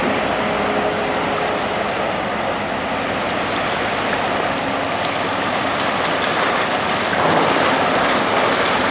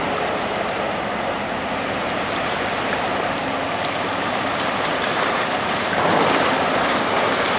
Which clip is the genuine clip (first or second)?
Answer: first